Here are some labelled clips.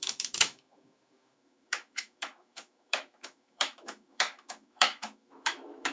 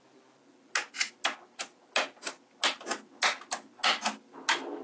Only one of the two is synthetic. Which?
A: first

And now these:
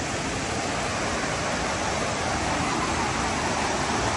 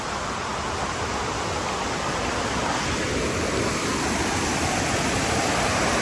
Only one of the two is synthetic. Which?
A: second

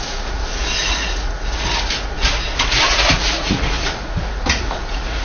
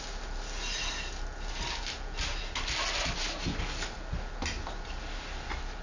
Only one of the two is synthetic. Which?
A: first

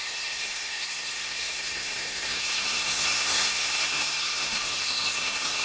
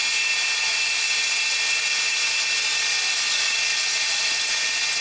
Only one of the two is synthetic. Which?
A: first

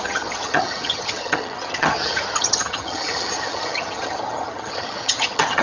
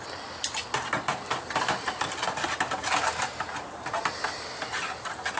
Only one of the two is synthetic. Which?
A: first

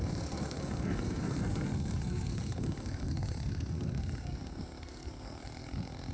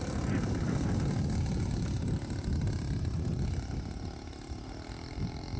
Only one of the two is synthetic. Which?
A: first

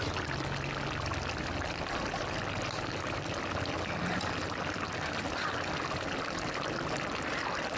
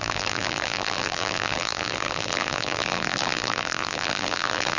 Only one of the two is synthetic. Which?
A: second